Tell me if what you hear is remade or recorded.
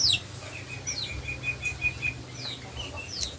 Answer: recorded